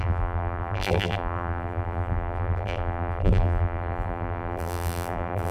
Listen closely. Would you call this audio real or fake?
fake